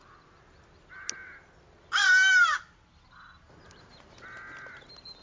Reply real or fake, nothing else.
real